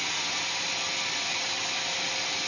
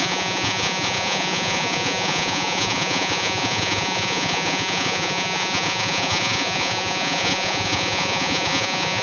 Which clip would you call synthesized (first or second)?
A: second